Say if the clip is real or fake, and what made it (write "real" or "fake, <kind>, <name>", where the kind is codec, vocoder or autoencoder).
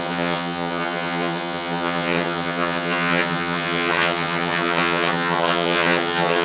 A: fake, vocoder, HiFi-GAN